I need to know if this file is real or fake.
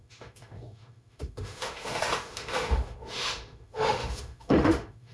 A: fake